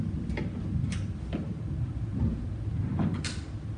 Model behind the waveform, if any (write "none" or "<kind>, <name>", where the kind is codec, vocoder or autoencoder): none